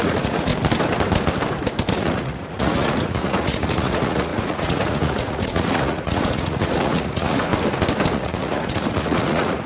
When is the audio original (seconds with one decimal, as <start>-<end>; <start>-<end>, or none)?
0.5-1.9; 7.5-8.1